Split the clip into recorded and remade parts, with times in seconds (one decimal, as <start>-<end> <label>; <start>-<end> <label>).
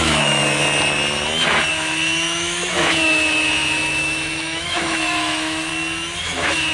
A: 0.0-0.4 remade; 0.4-1.7 recorded; 1.7-5.7 remade; 5.7-6.2 recorded; 6.2-6.7 remade